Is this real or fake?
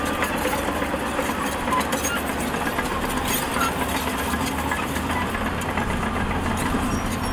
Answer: real